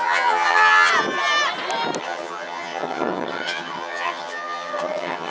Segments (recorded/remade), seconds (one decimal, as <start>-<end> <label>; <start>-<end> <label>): 0.0-0.9 remade; 0.9-2.0 recorded; 2.0-5.3 remade